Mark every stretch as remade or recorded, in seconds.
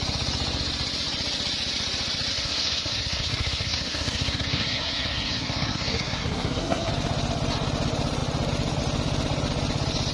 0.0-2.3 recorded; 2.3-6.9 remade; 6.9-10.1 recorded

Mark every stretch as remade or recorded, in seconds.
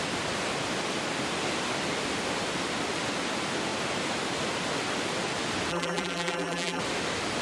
0.0-5.7 recorded; 5.7-6.8 remade; 6.8-7.4 recorded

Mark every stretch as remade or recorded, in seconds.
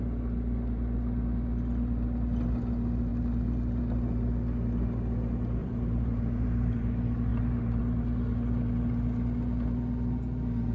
0.0-5.6 recorded; 5.6-6.8 remade; 6.8-7.3 recorded; 7.3-7.8 remade; 7.8-10.7 recorded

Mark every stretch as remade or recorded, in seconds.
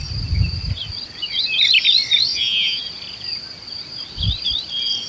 0.0-2.3 recorded; 2.3-2.8 remade; 2.8-5.1 recorded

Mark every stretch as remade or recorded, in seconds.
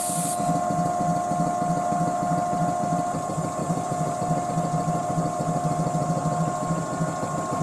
0.0-3.6 recorded; 3.6-4.5 remade; 4.5-7.6 recorded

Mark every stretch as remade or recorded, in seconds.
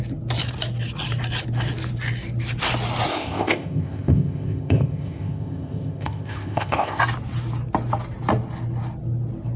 0.0-3.1 recorded; 3.1-7.0 remade; 7.0-9.6 recorded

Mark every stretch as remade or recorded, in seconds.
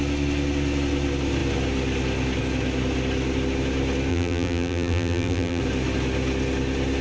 0.0-4.1 recorded; 4.1-5.6 remade; 5.6-7.0 recorded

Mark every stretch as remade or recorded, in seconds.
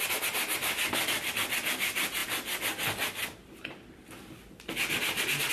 0.0-5.5 recorded